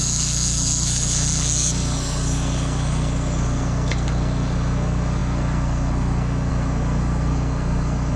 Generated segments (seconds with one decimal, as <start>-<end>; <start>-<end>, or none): 0.0-8.2